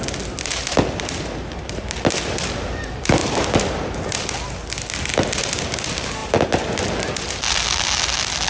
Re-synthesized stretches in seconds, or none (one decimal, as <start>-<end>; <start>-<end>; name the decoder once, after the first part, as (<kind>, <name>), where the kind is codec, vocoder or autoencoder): none